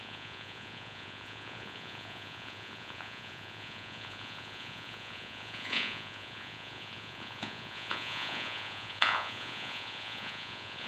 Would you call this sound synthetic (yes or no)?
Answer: yes